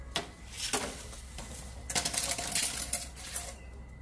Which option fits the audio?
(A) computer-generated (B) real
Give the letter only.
B